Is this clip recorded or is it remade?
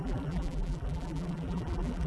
remade